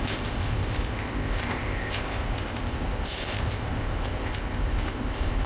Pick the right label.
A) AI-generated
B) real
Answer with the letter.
A